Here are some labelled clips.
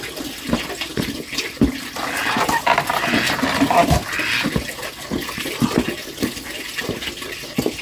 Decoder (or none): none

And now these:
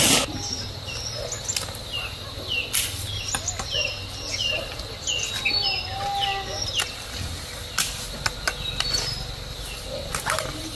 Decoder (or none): none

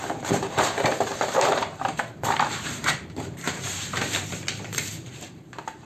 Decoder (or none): vocoder, BigVGAN v2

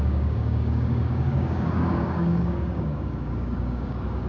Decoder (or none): codec, DAC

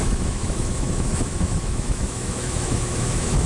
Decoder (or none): autoencoder, DAC-VAE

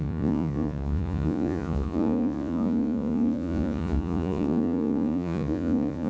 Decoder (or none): vocoder, Vocos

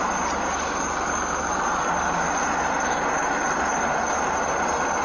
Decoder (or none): none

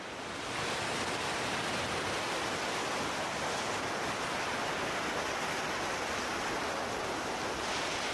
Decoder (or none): none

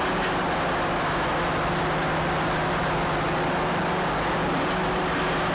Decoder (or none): none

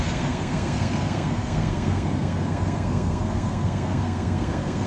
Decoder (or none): codec, SNAC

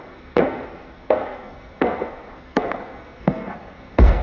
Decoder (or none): codec, SNAC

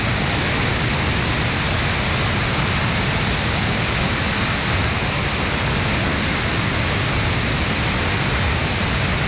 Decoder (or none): none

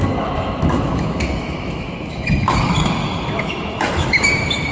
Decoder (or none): autoencoder, DAC-VAE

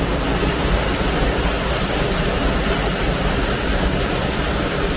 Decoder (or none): none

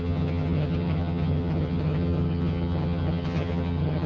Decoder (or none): vocoder, HiFi-GAN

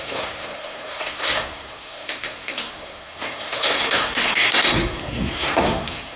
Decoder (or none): codec, SNAC